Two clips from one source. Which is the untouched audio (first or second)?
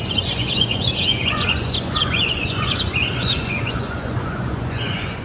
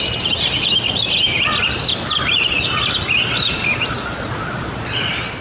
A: second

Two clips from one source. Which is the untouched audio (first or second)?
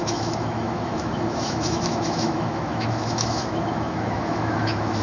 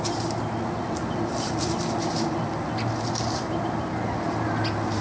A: second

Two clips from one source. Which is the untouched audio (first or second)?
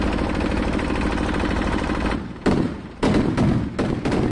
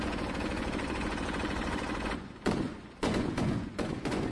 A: first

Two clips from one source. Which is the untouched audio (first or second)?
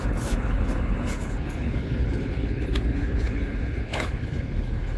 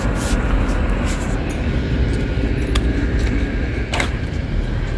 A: second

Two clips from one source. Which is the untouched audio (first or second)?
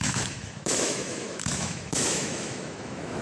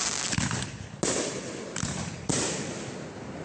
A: second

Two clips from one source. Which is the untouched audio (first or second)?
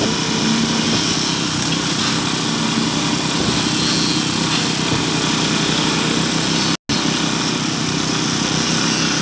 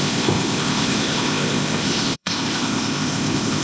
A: first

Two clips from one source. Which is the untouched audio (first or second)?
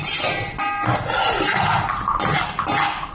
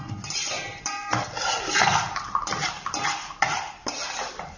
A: first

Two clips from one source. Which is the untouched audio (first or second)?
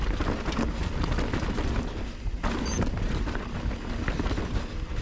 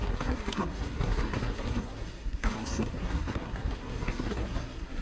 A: first